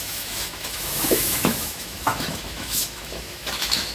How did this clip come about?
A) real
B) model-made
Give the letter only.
B